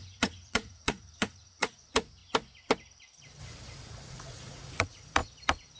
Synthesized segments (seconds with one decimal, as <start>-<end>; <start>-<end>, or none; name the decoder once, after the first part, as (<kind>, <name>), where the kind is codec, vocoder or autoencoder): 0.0-2.2 (vocoder, Vocos); 4.1-5.2